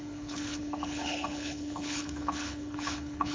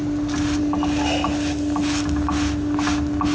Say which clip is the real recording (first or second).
second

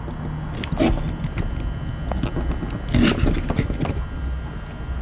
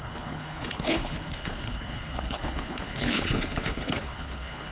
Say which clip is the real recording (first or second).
first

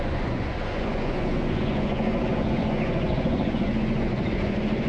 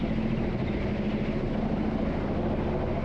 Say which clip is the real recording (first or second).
second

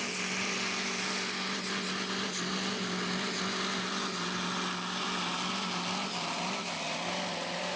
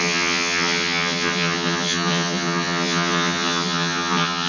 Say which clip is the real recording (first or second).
first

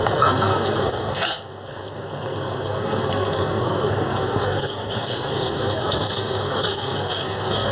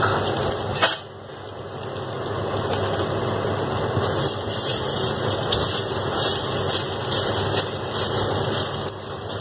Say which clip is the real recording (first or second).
second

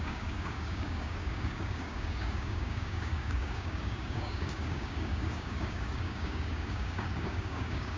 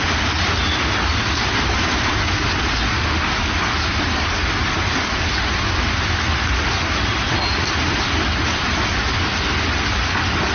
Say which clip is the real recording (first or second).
second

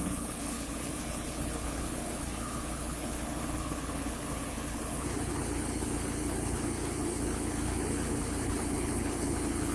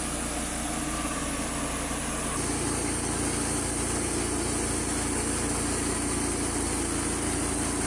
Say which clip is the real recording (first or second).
second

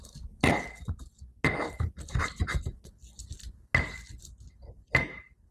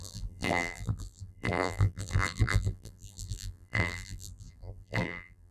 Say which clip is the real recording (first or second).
first